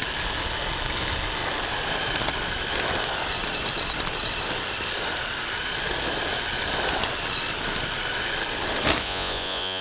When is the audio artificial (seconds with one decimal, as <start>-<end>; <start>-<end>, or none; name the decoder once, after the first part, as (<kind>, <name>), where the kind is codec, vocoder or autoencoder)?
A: 9.0-9.8 (vocoder, Vocos)